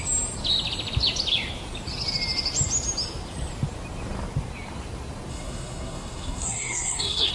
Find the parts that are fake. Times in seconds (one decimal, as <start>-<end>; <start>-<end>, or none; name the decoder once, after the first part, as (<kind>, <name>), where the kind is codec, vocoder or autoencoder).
5.3-7.3 (codec, SNAC)